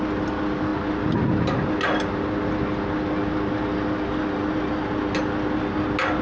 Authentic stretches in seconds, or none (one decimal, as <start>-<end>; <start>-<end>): 0.0-6.2